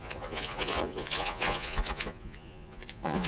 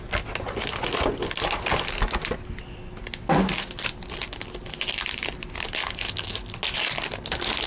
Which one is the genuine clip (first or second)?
second